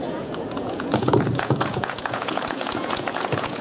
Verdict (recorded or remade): remade